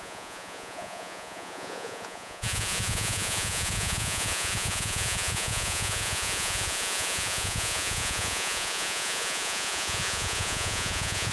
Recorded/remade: remade